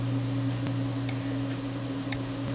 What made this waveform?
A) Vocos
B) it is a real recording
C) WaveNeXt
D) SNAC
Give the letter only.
B